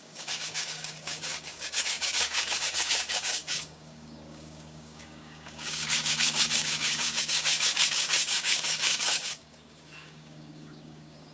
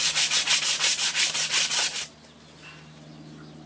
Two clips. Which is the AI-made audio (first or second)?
first